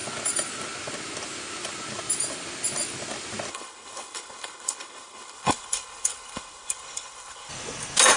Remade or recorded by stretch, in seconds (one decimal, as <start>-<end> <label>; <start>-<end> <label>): 0.0-3.5 recorded; 3.5-7.5 remade; 7.5-8.2 recorded